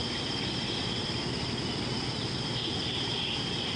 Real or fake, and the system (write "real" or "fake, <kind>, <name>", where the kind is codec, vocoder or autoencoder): real